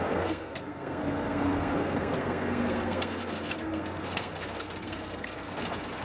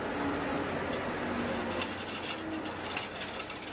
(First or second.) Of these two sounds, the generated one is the first